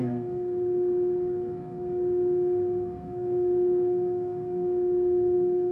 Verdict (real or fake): fake